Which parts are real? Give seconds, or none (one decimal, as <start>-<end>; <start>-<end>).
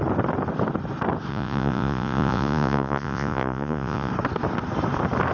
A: 0.0-1.3; 4.1-5.3